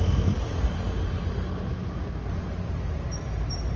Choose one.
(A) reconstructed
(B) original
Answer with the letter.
B